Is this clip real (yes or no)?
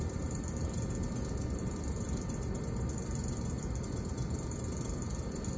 yes